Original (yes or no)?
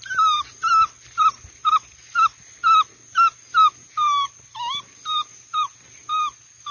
yes